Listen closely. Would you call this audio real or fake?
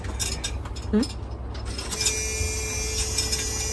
real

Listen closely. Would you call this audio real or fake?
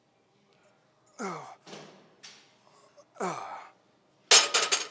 real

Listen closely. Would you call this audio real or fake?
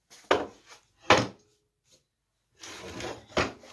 real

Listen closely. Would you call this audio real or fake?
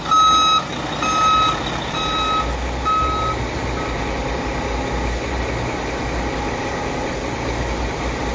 real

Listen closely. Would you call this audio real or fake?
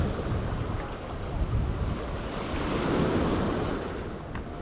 real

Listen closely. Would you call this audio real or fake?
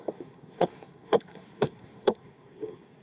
fake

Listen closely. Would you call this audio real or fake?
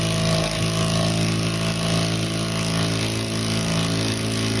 real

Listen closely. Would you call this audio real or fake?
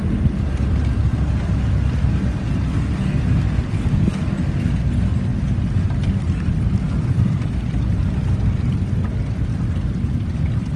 real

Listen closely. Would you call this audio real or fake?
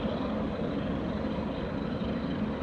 real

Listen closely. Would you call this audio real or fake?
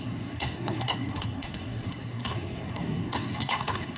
fake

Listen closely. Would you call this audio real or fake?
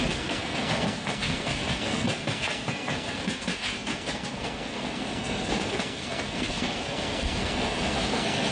fake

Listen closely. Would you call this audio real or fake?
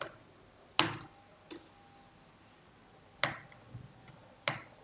real